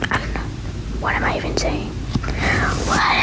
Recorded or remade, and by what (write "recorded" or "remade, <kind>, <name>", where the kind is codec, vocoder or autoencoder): recorded